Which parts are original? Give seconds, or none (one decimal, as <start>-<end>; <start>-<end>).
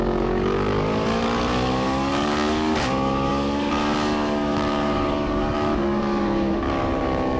none